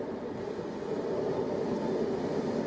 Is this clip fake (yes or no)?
no